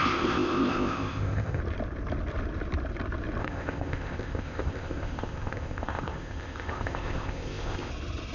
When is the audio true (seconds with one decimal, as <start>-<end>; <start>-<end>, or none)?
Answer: 1.6-3.4; 7.9-8.3